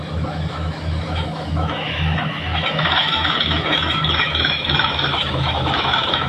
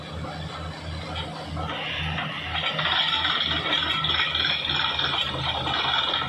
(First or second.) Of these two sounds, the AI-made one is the first